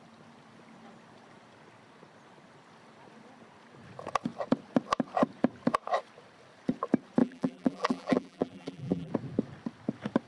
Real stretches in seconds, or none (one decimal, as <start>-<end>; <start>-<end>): 0.0-7.2; 9.1-10.3